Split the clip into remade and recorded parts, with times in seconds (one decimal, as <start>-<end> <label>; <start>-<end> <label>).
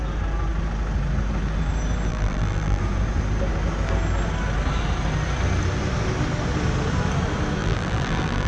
0.0-2.1 recorded; 2.1-2.8 remade; 2.8-7.6 recorded; 7.6-8.5 remade